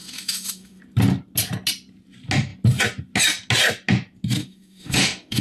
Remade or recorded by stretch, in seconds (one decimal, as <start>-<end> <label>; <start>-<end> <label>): 0.0-0.8 remade; 0.8-4.4 recorded; 4.4-5.4 remade

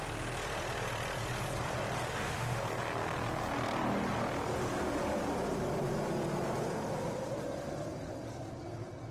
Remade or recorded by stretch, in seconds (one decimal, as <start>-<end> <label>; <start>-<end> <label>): 0.0-2.1 recorded; 2.1-2.6 remade; 2.6-9.1 recorded